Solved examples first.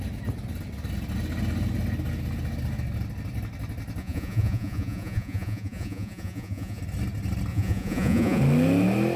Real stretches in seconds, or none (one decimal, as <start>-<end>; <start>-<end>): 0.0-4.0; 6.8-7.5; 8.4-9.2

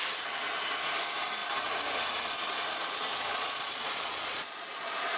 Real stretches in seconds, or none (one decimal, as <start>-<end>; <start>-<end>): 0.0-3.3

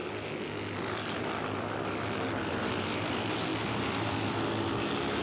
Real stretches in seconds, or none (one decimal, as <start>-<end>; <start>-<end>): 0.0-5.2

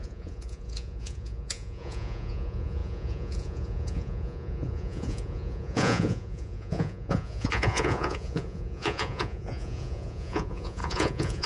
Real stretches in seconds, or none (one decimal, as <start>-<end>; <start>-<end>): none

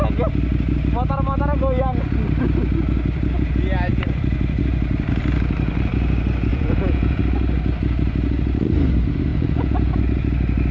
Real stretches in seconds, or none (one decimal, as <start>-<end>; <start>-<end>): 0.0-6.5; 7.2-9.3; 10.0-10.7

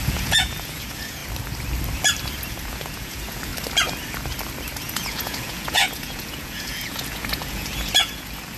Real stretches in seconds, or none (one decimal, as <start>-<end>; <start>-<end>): 1.2-2.5; 3.5-4.8

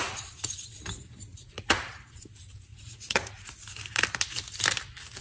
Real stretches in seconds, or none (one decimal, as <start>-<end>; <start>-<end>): 0.0-1.3; 2.2-2.7; 3.3-5.2

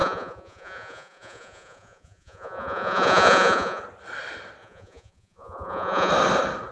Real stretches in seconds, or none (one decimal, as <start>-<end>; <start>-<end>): 3.8-4.6; 6.1-6.7